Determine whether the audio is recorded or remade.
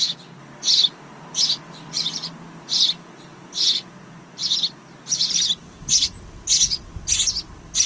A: recorded